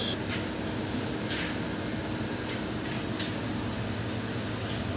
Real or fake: real